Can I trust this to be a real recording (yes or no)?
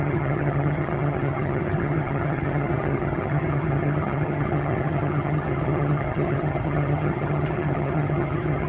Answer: no